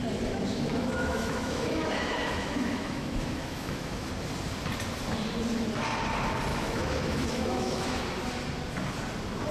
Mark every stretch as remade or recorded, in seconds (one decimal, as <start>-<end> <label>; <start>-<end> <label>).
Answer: 0.0-0.5 recorded; 0.5-4.1 remade; 4.1-6.5 recorded; 6.5-8.0 remade; 8.0-9.5 recorded